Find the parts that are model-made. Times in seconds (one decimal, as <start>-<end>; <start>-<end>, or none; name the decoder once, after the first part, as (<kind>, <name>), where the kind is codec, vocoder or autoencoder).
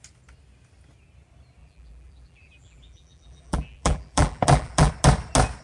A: 1.6-4.9 (vocoder, BigVGAN v2)